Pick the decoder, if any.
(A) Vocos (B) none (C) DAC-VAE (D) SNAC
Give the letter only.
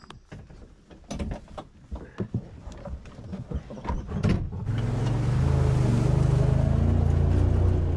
B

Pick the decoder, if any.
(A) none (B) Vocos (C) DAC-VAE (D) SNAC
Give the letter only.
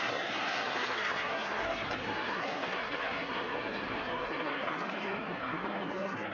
D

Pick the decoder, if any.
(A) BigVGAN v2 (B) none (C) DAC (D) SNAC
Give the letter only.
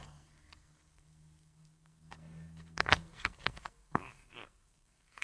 D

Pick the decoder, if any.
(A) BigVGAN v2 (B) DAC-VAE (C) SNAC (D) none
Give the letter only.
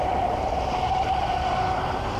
D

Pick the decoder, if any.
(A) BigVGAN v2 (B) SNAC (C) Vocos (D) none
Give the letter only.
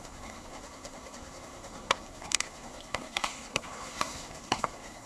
B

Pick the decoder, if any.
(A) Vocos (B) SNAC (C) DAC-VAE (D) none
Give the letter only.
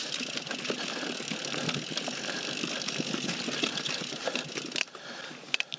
D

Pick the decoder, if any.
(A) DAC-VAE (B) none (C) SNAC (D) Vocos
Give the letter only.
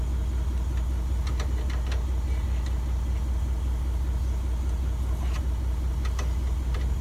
B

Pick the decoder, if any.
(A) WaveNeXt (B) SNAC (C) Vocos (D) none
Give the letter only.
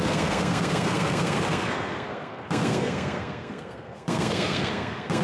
B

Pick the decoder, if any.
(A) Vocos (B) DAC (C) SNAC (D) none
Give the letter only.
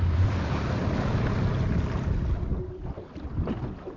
D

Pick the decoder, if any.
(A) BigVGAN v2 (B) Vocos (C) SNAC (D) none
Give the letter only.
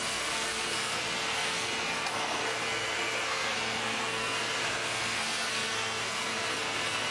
C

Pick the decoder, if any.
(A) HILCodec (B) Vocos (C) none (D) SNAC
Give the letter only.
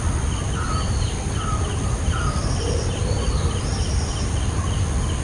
C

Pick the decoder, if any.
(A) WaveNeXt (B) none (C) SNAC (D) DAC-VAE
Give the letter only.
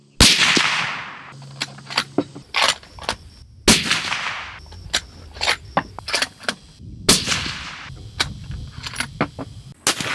B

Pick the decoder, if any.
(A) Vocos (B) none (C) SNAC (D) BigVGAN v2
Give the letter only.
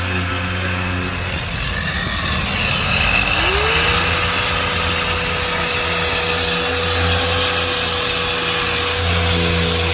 B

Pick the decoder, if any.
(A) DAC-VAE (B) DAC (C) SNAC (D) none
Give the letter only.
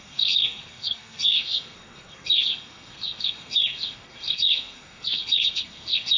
C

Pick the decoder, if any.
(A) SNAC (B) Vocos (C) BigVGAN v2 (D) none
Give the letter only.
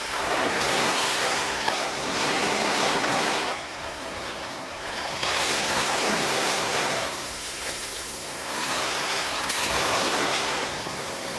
A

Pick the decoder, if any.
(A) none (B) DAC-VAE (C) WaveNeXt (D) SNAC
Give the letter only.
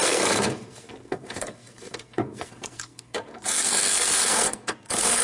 D